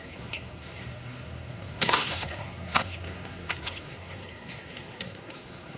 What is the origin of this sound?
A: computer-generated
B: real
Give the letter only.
A